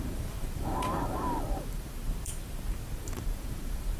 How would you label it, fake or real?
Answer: fake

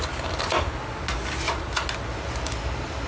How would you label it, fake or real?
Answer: real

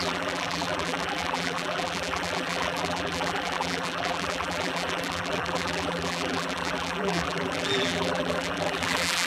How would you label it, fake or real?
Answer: fake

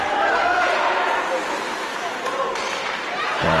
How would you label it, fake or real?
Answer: fake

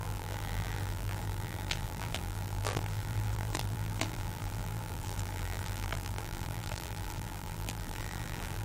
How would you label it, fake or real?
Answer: fake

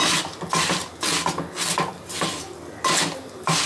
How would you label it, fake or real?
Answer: real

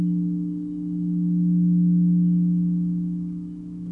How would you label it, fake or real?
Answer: real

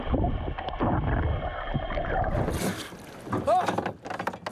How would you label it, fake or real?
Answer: real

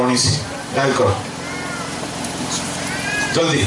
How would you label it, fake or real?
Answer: fake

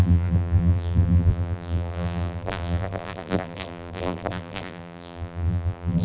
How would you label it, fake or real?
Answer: fake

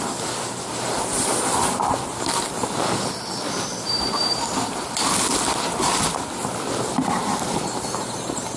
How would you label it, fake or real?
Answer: real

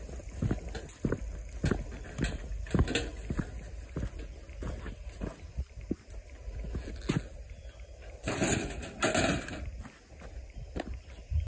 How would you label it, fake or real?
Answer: real